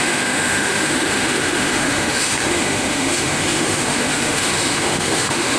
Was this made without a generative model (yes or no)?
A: no